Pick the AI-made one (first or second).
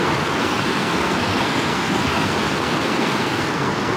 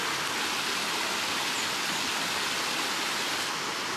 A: first